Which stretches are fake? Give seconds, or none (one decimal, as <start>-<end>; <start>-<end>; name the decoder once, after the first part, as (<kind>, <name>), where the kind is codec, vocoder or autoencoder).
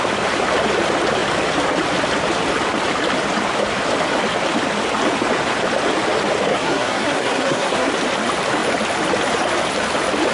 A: 6.5-7.9 (codec, SNAC)